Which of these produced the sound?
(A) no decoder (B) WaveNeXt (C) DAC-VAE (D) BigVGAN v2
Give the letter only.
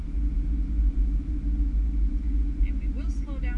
A